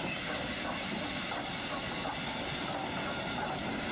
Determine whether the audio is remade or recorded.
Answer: recorded